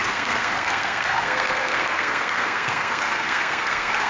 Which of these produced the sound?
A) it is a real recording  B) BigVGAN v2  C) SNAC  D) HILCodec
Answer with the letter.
C